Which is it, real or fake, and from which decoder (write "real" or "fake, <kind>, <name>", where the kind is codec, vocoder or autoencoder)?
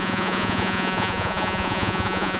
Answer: fake, vocoder, Vocos